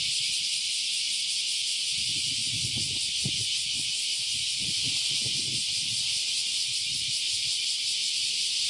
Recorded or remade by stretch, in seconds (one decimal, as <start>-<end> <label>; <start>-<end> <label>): 0.0-5.9 recorded; 5.9-8.7 remade